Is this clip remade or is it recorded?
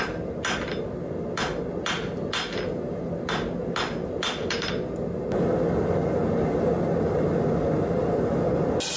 recorded